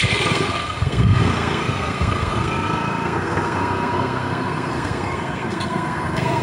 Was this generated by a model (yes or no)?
yes